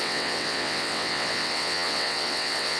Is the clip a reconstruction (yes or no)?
yes